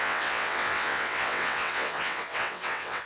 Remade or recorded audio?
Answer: remade